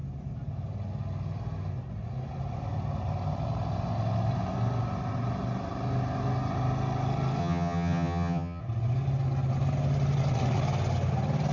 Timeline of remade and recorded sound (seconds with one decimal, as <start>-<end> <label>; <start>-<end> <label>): 0.0-7.4 recorded; 7.4-8.6 remade; 8.6-11.5 recorded